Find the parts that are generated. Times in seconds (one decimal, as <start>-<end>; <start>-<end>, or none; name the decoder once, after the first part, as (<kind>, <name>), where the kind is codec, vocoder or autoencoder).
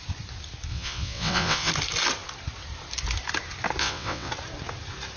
0.7-1.7 (vocoder, WaveNeXt); 3.8-4.3